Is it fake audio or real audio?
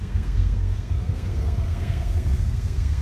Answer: fake